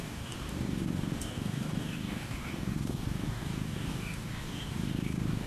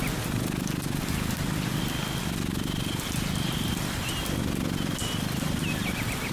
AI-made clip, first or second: first